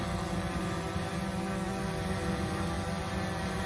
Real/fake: real